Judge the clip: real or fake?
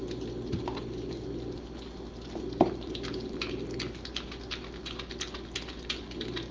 real